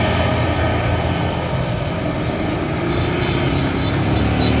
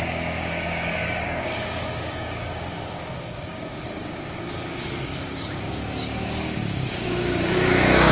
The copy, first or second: second